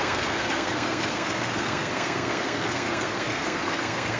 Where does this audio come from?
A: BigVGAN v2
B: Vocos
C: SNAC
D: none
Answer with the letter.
C